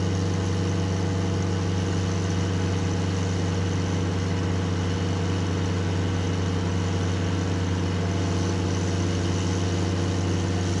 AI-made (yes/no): no